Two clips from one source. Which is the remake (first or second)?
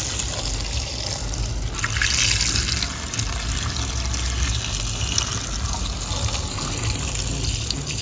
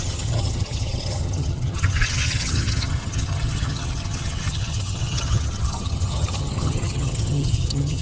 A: second